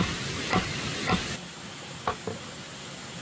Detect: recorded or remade recorded